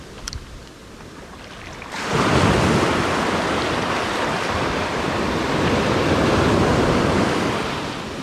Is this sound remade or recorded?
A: recorded